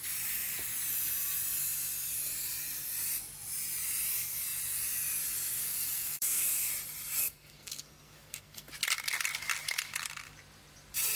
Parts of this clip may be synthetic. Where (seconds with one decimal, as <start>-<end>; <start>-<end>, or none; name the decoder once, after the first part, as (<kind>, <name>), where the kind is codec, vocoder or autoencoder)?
5.6-6.7 (codec, SNAC); 7.2-8.7